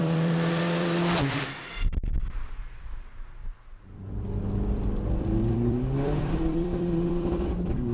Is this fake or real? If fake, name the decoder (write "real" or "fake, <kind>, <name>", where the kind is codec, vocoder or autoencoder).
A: fake, vocoder, BigVGAN v2